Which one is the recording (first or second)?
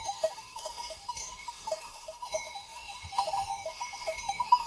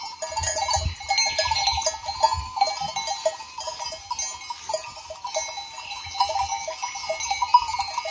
second